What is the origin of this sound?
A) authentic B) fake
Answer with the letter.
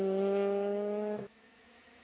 B